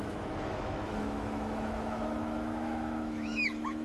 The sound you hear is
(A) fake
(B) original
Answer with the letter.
A